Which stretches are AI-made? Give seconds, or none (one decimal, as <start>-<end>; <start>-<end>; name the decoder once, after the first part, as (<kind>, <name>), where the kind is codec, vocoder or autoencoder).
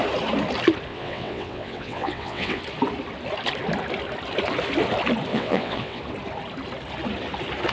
0.9-2.6 (vocoder, WaveNeXt); 5.3-6.0